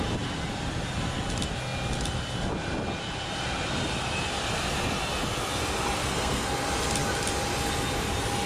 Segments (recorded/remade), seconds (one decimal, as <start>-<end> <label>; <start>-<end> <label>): 0.0-6.0 recorded; 6.0-6.5 remade; 6.5-8.5 recorded